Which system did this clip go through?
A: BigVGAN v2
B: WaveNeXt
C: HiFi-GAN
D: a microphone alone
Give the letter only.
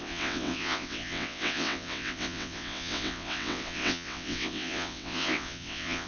B